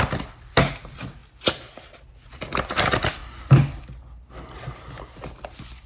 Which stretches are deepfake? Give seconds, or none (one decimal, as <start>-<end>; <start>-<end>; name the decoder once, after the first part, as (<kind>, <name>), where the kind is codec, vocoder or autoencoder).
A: none